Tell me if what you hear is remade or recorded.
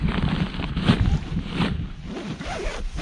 remade